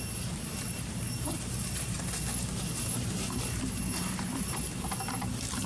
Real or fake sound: fake